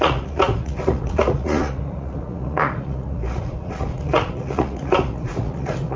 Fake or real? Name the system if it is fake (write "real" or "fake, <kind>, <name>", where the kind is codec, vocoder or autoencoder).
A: fake, vocoder, Vocos